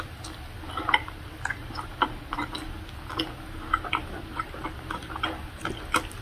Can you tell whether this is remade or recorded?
recorded